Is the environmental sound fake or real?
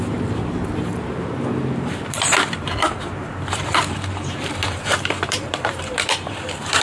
fake